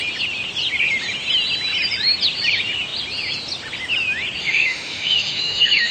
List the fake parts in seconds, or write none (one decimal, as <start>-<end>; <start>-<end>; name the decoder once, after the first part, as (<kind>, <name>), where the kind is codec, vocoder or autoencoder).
4.4-5.9 (autoencoder, DAC-VAE)